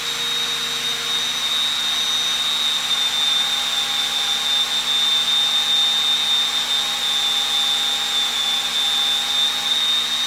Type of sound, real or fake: real